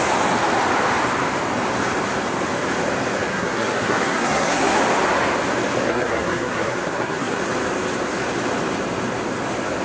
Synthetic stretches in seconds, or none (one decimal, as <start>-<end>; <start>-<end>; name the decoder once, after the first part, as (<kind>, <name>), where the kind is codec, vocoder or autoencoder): 3.3-4.8 (codec, SNAC); 5.9-7.4